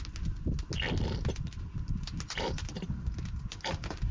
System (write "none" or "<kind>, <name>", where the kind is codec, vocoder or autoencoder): none